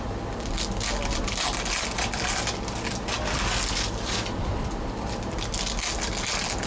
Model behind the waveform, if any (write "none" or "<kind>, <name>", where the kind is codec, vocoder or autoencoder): none